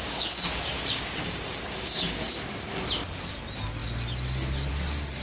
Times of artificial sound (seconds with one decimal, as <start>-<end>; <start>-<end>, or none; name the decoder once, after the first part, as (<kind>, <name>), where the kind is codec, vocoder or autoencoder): 0.0-2.4 (codec, DAC)